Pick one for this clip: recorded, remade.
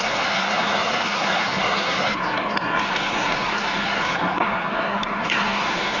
remade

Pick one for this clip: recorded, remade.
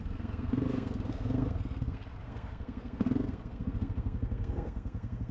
remade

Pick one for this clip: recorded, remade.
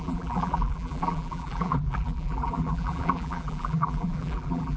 remade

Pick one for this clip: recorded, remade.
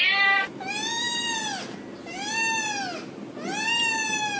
recorded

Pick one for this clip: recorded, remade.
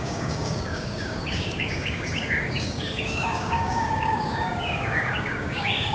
remade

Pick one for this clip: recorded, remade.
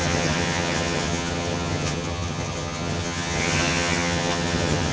remade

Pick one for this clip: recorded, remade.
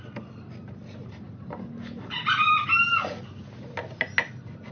recorded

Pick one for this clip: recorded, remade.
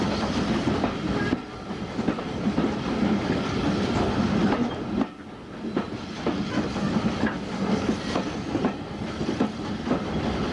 recorded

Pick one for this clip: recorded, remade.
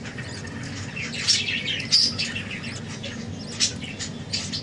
recorded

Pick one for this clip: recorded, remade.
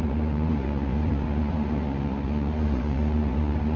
remade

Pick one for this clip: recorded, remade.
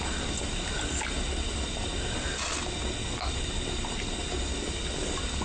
recorded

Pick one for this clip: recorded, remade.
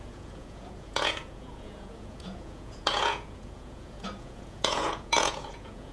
remade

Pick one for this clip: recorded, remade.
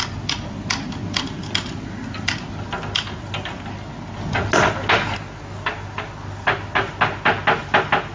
recorded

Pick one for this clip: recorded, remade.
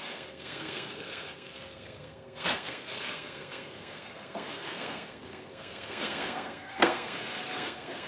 remade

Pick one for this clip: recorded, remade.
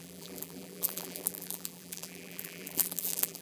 remade